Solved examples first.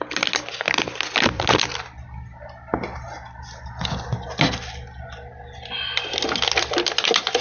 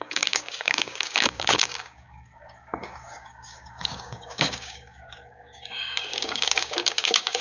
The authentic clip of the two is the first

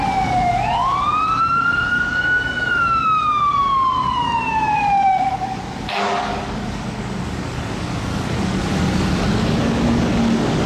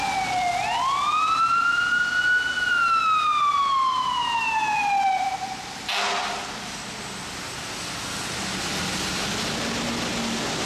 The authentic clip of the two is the second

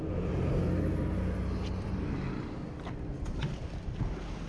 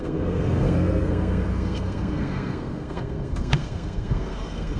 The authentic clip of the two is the first